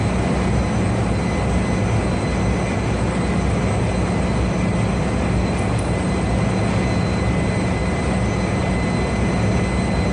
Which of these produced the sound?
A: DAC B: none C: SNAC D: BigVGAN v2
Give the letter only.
B